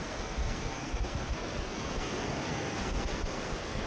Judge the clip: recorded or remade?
remade